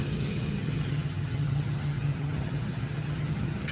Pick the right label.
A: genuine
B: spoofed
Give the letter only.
B